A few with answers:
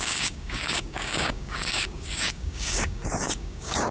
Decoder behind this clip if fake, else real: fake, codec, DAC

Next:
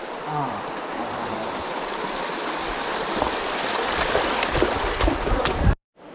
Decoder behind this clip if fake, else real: fake, vocoder, BigVGAN v2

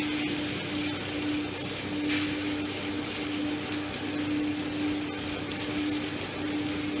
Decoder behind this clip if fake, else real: real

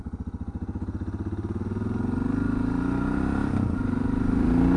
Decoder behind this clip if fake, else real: real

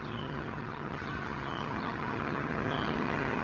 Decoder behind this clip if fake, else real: fake, vocoder, HiFi-GAN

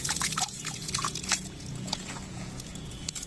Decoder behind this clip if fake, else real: fake, vocoder, Vocos